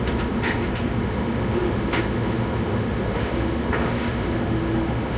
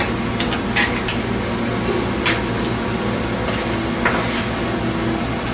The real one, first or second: second